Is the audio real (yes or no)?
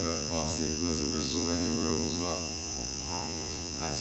no